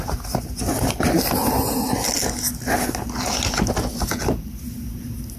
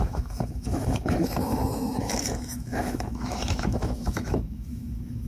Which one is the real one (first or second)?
first